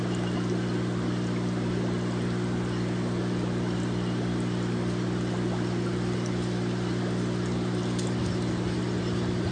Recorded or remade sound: recorded